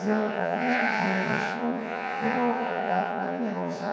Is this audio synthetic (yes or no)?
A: yes